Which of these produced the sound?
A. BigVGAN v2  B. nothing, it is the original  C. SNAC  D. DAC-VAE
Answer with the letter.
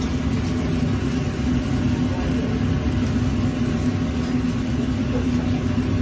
B